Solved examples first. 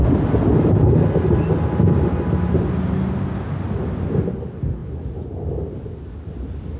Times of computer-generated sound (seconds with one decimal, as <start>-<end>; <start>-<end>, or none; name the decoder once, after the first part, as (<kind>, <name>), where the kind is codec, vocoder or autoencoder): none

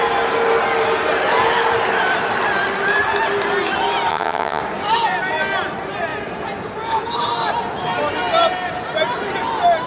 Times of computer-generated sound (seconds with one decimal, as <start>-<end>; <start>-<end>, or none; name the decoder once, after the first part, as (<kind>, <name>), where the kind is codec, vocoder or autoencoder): 4.1-4.6 (vocoder, HiFi-GAN)

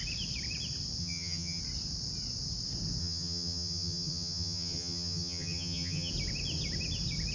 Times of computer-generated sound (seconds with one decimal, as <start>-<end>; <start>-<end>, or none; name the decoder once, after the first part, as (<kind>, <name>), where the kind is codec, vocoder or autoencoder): 1.0-1.6 (vocoder, HiFi-GAN); 3.0-6.1

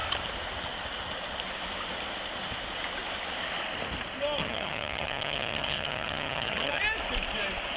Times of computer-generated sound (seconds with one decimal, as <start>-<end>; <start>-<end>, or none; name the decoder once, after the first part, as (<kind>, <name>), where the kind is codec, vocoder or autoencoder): 4.4-6.8 (vocoder, HiFi-GAN)

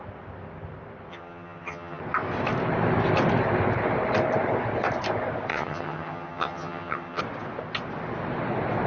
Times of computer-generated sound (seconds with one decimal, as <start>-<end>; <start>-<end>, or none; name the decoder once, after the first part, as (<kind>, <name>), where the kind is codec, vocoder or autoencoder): 1.1-2.0 (vocoder, HiFi-GAN); 5.5-7.2